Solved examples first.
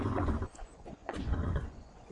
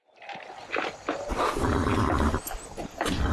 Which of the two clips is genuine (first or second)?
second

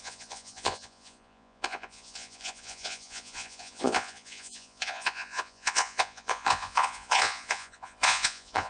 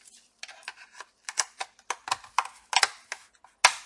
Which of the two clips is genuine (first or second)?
second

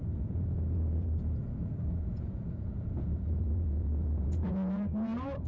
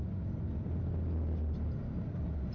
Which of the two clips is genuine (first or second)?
second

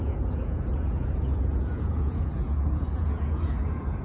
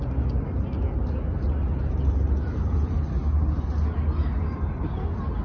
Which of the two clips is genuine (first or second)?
second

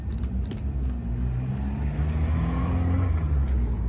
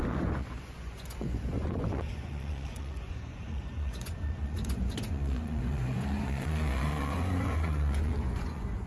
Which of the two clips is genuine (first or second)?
first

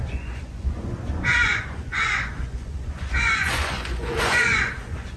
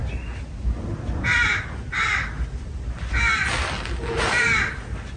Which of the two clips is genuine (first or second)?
second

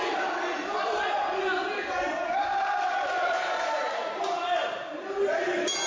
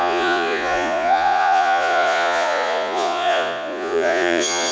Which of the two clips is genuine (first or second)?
first